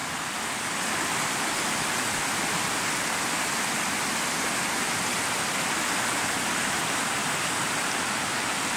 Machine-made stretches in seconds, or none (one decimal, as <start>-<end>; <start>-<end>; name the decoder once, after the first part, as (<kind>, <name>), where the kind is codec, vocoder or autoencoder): none